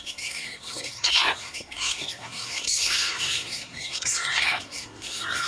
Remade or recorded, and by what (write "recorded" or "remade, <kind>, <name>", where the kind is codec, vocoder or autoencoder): remade, codec, SNAC